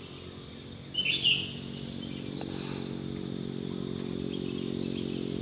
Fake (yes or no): no